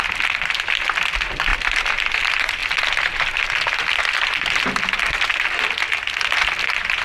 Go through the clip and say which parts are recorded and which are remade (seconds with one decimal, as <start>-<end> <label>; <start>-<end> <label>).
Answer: 0.0-7.0 recorded